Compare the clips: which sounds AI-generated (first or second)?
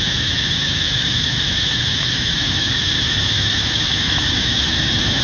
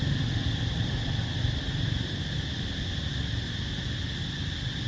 first